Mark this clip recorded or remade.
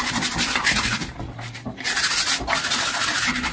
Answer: recorded